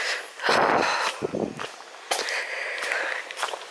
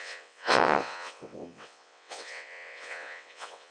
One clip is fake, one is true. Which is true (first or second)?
first